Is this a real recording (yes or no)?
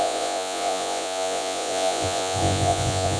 no